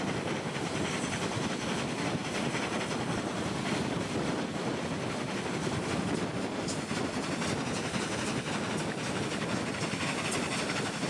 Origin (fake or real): real